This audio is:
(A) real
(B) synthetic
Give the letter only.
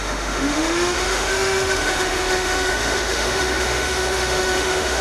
B